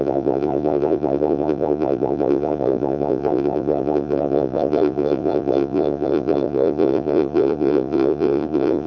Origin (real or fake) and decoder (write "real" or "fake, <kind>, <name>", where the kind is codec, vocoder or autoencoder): fake, vocoder, Vocos